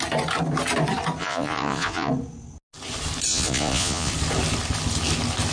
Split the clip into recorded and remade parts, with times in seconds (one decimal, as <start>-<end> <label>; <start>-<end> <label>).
0.0-1.2 recorded; 1.2-2.1 remade; 2.1-3.3 recorded; 3.3-4.1 remade; 4.1-5.5 recorded